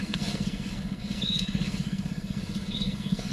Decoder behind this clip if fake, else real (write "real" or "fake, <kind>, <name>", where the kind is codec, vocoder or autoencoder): fake, codec, SNAC